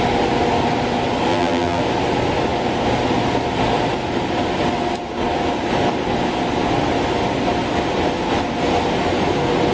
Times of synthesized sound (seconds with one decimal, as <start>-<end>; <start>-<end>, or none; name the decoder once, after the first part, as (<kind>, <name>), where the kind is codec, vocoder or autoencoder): 1.3-1.8 (vocoder, BigVGAN v2)